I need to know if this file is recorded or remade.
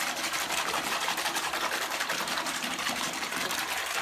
remade